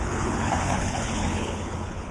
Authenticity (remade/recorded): remade